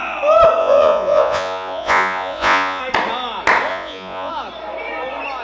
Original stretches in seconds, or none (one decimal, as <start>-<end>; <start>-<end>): 0.0-0.6; 2.8-3.7; 4.3-5.4

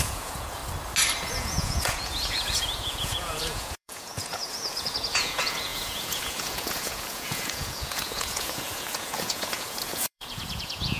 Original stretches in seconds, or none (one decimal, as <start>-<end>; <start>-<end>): 0.6-1.3

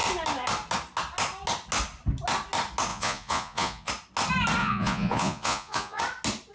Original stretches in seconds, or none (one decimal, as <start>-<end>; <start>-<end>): 0.0-2.9; 3.9-4.6; 6.0-6.5

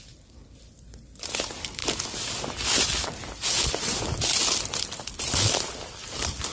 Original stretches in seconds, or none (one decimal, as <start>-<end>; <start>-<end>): 0.0-6.5

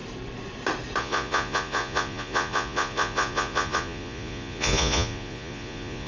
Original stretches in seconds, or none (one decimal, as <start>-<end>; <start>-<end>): 0.0-1.0

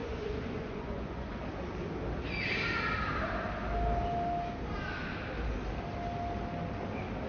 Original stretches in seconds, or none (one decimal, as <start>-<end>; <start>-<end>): 1.4-7.3

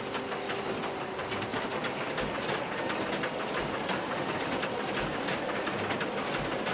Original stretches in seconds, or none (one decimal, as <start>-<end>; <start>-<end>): 0.0-6.7